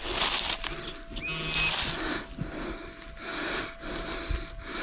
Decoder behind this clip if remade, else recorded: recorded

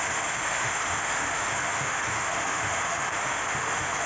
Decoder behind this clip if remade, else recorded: remade, autoencoder, DAC-VAE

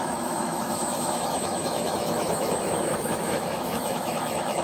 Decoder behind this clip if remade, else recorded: remade, autoencoder, DAC-VAE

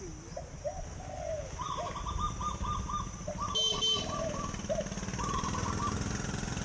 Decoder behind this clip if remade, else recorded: recorded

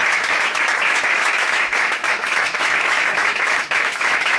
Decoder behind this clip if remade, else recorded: remade, autoencoder, DAC-VAE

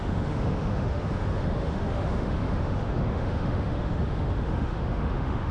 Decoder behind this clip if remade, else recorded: remade, autoencoder, DAC-VAE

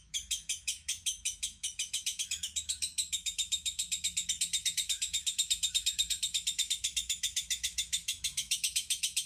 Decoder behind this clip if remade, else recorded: remade, autoencoder, DAC-VAE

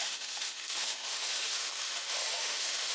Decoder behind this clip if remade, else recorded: remade, autoencoder, DAC-VAE